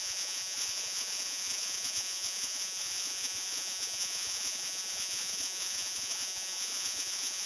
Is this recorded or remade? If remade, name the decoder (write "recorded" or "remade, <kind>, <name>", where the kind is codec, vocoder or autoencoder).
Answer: remade, vocoder, Vocos